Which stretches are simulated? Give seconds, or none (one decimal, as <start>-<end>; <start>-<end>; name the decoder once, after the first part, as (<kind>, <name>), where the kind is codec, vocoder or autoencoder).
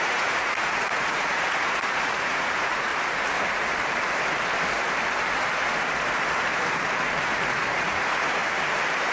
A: 0.0-2.9 (vocoder, Vocos); 7.5-8.4